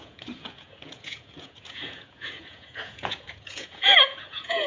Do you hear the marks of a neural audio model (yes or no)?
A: yes